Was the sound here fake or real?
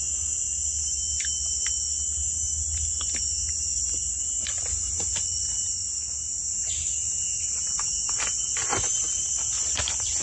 real